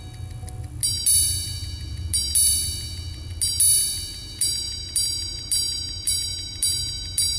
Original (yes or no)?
yes